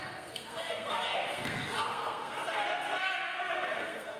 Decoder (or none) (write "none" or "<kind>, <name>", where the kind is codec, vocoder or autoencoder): codec, SNAC